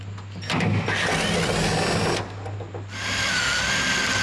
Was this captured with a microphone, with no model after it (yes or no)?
yes